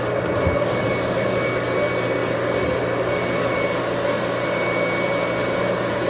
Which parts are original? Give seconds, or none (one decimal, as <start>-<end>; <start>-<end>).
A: 0.0-6.1